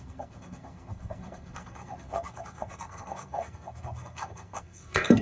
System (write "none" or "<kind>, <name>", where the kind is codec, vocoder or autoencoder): codec, SNAC